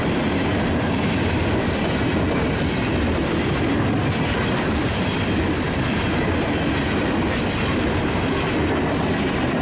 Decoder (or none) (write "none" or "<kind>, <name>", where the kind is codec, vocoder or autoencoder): none